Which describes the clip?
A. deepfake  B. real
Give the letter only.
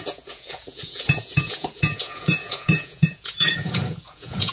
A